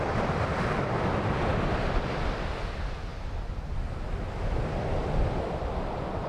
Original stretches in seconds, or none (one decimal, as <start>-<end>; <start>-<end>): 0.0-5.0